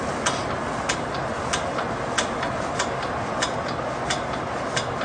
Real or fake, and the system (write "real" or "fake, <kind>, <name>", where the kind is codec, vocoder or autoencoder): real